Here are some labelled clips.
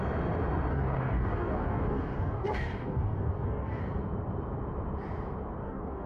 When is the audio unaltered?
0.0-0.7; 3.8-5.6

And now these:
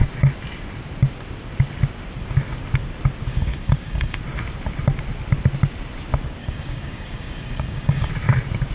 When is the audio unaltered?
0.0-3.3; 4.2-6.4; 8.1-8.7

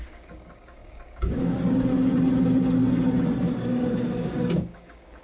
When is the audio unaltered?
1.9-4.1

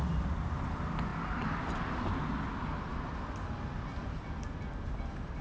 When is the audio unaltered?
0.0-5.4

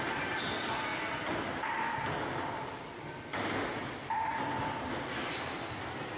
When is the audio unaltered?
0.0-6.2

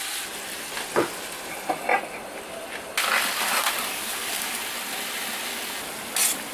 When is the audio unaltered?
0.0-3.9; 4.6-6.5